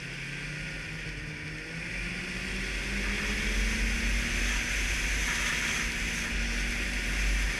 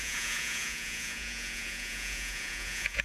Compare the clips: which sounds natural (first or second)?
first